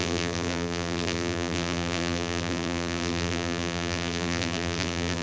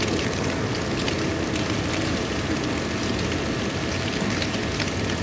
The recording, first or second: second